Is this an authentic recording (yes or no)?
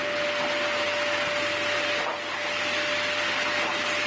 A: yes